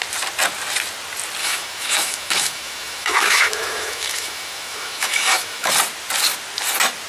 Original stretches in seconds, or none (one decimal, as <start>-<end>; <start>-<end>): 0.0-1.4; 5.7-7.1